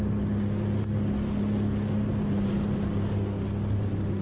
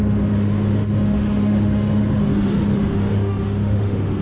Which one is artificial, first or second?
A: second